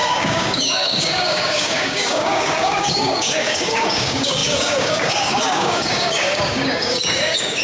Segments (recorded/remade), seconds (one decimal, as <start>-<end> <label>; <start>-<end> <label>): 0.0-7.6 remade